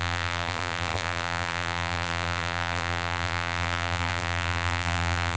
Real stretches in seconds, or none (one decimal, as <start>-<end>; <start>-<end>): none